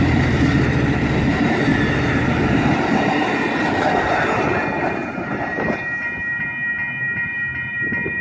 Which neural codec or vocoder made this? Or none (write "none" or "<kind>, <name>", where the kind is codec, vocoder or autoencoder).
none